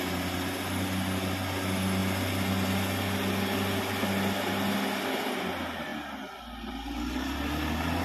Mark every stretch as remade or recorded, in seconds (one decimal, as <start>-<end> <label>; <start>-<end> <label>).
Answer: 0.0-8.0 recorded